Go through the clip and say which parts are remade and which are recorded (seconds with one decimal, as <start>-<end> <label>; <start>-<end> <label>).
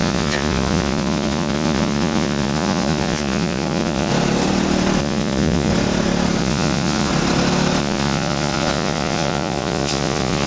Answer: 0.0-4.1 remade; 4.1-5.0 recorded; 5.0-5.7 remade; 5.7-6.4 recorded; 6.4-7.1 remade; 7.1-7.8 recorded; 7.8-10.5 remade